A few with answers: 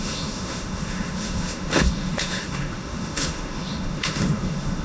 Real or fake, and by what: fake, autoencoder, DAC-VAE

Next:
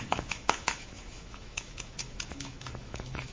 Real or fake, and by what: fake, autoencoder, DAC-VAE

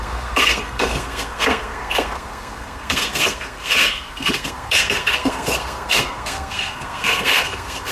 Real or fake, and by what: fake, codec, SNAC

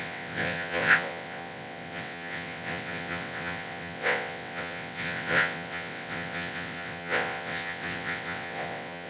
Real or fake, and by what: fake, vocoder, WaveNeXt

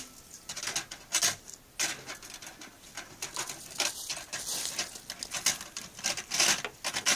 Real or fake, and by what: real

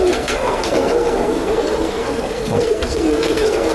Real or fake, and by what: fake, codec, SNAC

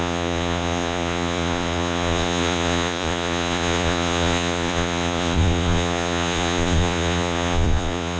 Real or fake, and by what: fake, vocoder, Vocos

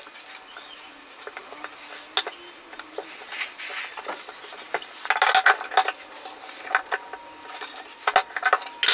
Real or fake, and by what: real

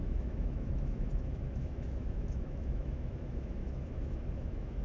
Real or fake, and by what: fake, autoencoder, DAC-VAE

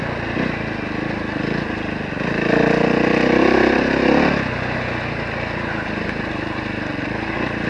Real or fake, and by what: real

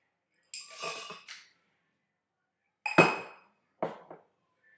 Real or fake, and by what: real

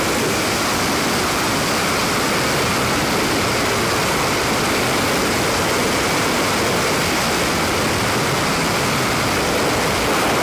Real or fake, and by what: real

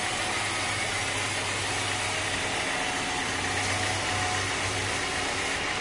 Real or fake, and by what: real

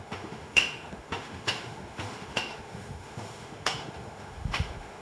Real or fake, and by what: fake, autoencoder, DAC-VAE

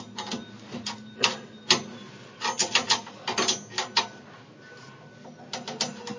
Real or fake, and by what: real